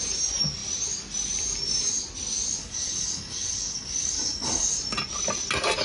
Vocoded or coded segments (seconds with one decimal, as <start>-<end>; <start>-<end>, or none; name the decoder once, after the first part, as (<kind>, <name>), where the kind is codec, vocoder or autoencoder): 2.6-4.7 (codec, DAC)